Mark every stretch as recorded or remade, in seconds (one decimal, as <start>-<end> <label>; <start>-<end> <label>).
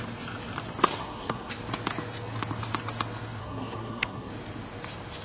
0.0-1.0 recorded; 1.0-1.5 remade; 1.5-3.4 recorded; 3.4-4.3 remade; 4.3-5.2 recorded